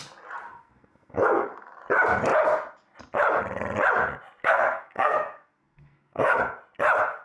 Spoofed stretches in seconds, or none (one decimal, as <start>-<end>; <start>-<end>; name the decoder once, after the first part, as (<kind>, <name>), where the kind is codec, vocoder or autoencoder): 0.5-1.8 (codec, SNAC); 4.4-6.4